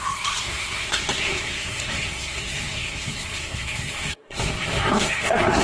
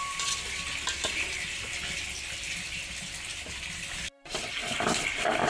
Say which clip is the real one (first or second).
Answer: second